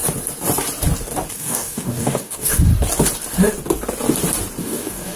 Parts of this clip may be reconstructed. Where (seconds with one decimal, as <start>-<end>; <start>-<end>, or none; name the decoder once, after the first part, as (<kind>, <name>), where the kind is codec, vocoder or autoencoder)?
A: 1.3-2.7 (codec, DAC); 4.6-5.2